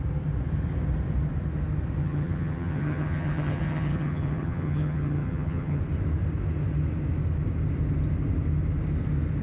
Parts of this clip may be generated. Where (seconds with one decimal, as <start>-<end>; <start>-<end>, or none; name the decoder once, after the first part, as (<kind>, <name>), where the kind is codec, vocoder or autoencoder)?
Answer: 2.0-5.8 (vocoder, HiFi-GAN)